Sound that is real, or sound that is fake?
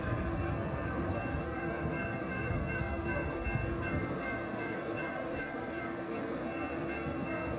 fake